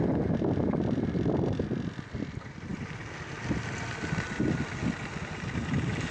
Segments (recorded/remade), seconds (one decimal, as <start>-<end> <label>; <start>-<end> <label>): 0.0-6.1 recorded